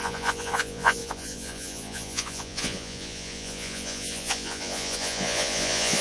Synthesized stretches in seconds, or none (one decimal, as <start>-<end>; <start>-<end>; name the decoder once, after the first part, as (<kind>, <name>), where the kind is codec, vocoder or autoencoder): 0.0-6.0 (vocoder, Vocos)